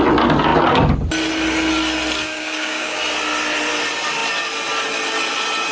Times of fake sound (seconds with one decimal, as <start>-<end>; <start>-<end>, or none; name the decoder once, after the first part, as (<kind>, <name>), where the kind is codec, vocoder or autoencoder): 2.2-3.0 (codec, DAC)

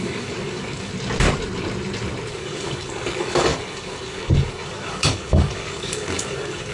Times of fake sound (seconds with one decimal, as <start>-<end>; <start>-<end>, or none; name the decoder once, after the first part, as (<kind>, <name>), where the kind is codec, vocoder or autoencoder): 0.0-0.9 (codec, DAC); 2.3-6.7